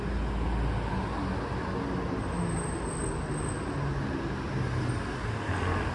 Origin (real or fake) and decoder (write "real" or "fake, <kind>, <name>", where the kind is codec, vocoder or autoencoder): real